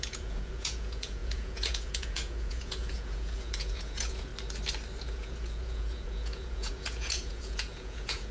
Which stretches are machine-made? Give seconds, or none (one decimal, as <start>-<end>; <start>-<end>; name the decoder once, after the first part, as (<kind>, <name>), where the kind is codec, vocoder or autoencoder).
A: 0.0-4.3 (vocoder, Vocos); 5.0-8.3